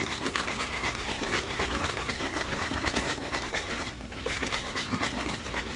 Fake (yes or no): yes